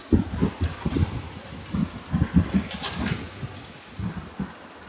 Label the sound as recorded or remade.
recorded